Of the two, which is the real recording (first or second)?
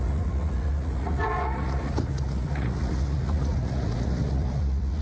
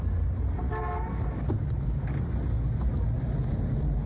second